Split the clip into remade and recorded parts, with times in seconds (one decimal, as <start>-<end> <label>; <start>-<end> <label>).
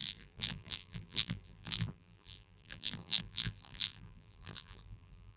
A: 0.0-5.4 remade